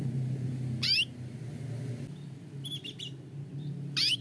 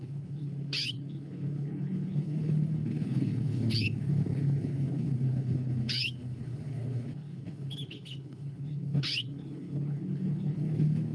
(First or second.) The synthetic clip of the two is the second